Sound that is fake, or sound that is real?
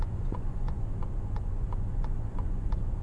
fake